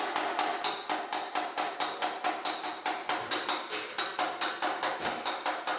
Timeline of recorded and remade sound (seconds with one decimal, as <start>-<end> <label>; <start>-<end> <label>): 0.0-5.8 recorded